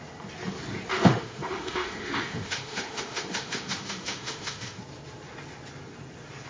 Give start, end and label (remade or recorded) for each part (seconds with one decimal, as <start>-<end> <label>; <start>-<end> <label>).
0.0-0.9 recorded; 0.9-4.8 remade; 4.8-6.5 recorded